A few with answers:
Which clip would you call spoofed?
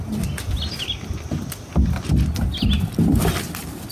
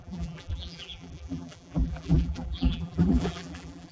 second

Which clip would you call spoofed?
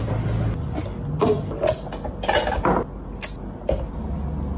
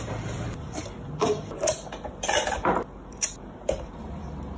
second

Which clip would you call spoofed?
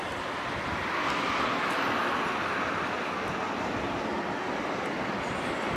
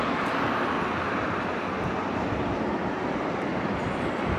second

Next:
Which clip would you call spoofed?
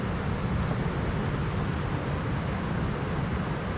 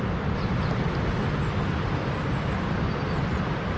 second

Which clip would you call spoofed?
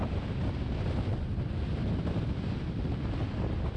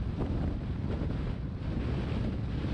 second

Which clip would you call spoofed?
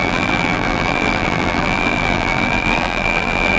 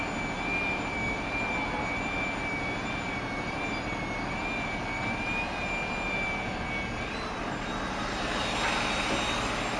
first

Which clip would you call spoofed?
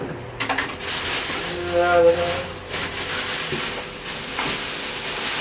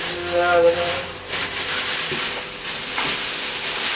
second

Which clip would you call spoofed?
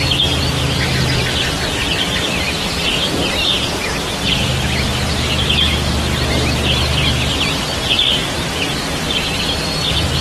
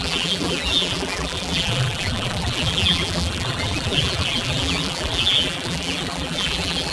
second